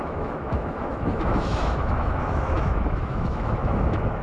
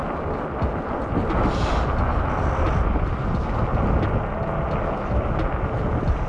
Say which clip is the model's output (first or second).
first